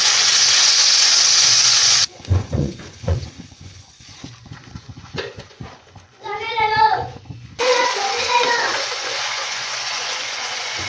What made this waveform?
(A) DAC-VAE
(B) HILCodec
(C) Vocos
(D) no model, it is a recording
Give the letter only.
C